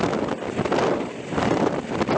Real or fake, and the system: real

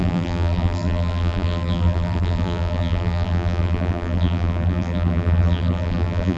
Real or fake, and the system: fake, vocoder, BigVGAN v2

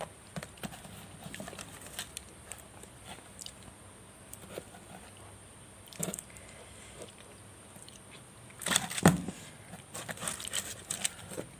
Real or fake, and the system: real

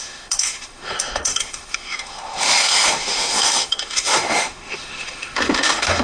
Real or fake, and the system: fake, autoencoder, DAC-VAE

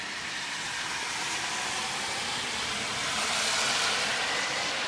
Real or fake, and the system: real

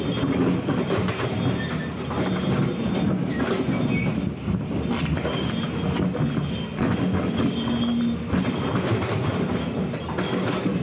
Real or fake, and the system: real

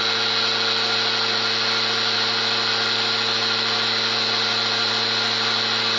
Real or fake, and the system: real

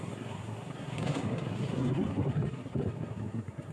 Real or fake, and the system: fake, codec, SNAC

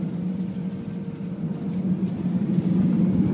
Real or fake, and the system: real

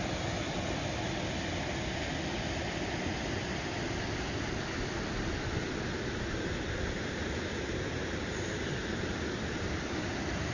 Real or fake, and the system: real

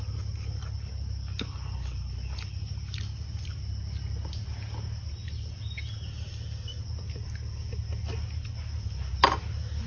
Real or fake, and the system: real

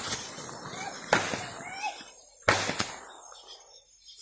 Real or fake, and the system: real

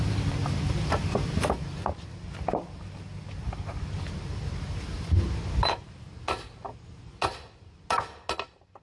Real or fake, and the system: real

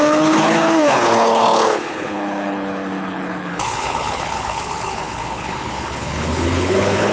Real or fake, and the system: fake, codec, HILCodec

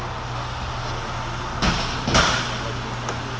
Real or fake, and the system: real